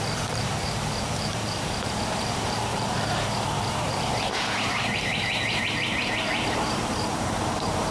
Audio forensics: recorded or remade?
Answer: remade